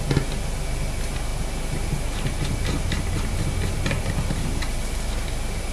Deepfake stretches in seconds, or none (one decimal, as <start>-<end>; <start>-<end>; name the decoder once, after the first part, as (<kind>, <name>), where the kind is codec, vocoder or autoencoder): none